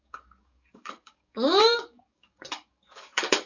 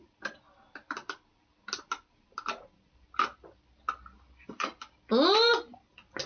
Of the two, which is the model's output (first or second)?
first